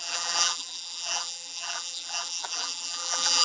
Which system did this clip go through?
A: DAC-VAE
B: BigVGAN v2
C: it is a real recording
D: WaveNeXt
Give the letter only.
B